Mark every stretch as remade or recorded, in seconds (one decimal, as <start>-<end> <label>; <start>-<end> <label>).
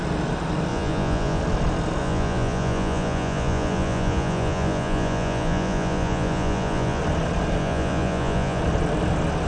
0.0-0.7 recorded; 0.7-1.4 remade; 1.4-2.0 recorded; 2.0-7.0 remade; 7.0-7.6 recorded; 7.6-8.6 remade; 8.6-9.5 recorded